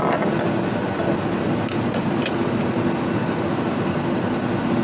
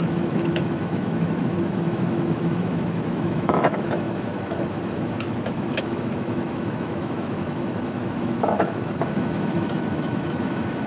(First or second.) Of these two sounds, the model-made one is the second